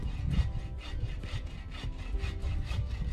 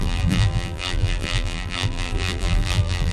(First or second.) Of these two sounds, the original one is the first